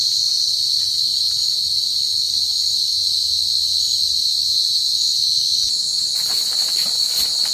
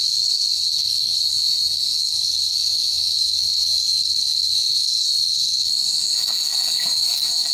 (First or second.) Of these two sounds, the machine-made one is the second